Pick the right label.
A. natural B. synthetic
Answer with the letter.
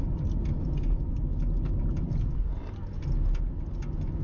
A